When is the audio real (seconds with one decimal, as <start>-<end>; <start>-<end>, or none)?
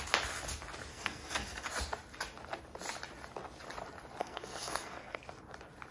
0.0-0.9; 1.7-4.2; 5.2-5.9